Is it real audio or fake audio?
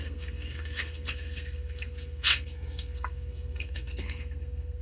fake